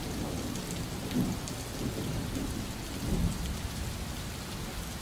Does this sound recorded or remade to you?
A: recorded